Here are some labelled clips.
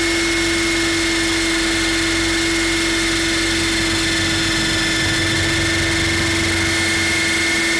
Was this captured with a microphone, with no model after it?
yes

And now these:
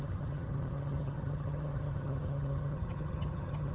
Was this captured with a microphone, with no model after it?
no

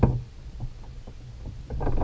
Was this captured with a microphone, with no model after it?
yes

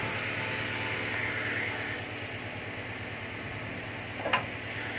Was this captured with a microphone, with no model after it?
yes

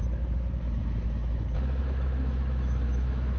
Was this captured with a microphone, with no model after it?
no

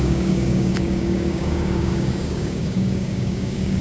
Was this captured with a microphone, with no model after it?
no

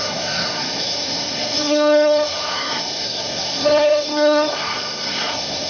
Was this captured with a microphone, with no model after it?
no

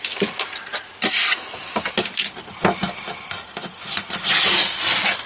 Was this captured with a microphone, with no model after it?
yes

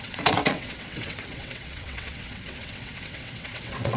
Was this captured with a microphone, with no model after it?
no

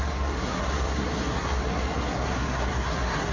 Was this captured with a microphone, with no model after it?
no